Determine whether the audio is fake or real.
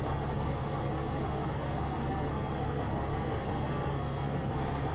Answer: fake